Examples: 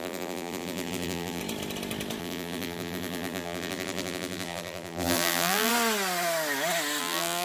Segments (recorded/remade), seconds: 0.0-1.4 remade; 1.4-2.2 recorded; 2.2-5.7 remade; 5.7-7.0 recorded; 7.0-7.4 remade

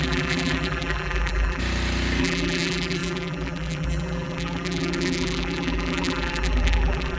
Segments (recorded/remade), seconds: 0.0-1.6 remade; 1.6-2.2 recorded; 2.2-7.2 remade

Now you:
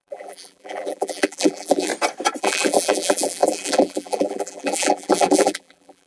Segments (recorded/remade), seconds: 0.0-1.9 remade; 1.9-2.4 recorded; 2.4-6.1 remade

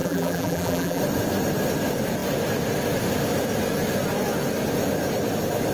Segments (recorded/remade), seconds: 0.0-1.0 remade; 1.0-5.7 recorded

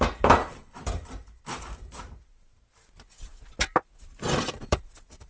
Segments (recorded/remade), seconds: 0.0-2.5 remade; 2.5-4.4 recorded; 4.4-5.3 remade

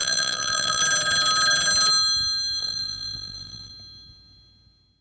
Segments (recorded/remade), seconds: 0.0-0.8 remade; 0.8-2.6 recorded; 2.6-3.7 remade; 3.7-5.0 recorded